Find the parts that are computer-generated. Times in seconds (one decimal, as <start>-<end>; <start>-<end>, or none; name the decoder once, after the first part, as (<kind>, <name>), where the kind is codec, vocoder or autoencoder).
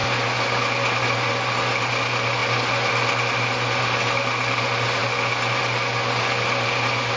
none